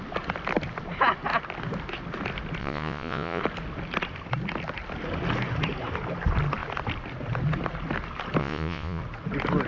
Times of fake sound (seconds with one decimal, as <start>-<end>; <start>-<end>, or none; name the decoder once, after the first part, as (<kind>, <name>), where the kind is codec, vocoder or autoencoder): 2.6-3.4 (vocoder, Vocos); 8.4-9.0